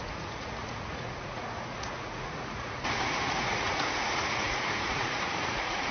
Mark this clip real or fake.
fake